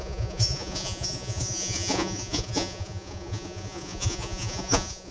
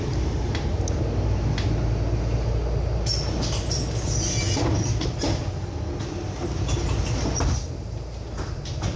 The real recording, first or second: second